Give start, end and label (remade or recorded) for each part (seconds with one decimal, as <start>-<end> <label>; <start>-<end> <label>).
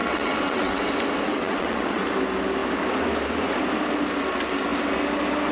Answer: 0.0-0.8 remade; 0.8-1.3 recorded; 1.3-2.0 remade; 2.0-5.5 recorded